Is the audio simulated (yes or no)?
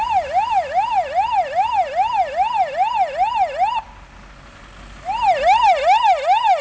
no